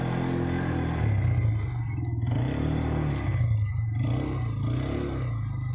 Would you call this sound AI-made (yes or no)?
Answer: no